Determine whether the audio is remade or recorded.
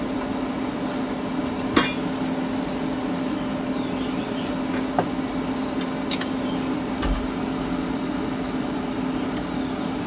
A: recorded